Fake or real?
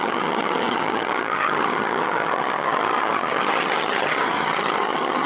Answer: fake